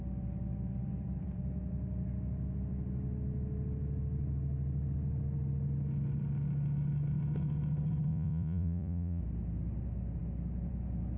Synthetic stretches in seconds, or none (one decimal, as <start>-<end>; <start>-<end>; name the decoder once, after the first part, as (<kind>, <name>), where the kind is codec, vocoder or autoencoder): 8.1-9.2 (vocoder, Vocos)